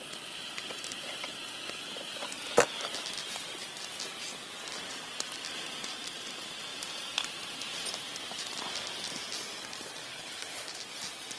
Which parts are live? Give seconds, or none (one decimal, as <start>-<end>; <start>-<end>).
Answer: 0.0-10.0; 10.8-11.4